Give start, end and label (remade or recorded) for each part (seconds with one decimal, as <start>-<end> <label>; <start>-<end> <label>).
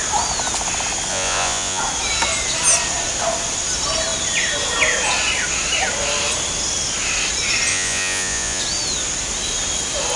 0.0-1.1 recorded; 1.1-1.8 remade; 1.8-7.7 recorded; 7.7-8.6 remade; 8.6-10.2 recorded